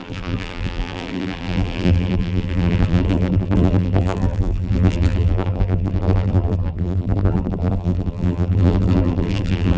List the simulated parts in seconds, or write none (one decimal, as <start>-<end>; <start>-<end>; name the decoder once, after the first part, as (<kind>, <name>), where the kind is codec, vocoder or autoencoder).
0.0-9.8 (vocoder, BigVGAN v2)